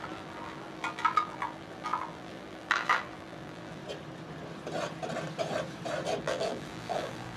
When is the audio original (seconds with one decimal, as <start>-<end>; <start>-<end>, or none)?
3.8-6.2